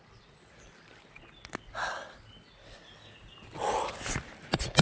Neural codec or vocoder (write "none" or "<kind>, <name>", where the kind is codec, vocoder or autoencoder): none